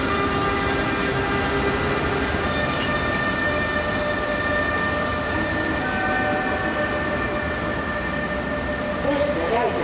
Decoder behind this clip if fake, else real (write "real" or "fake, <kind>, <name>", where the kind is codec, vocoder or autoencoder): real